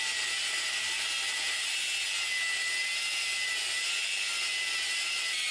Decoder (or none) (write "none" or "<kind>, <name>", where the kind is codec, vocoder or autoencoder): none